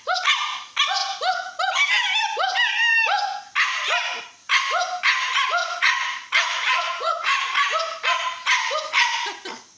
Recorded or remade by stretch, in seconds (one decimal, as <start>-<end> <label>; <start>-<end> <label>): 0.0-5.6 recorded; 5.6-7.4 remade; 7.4-9.8 recorded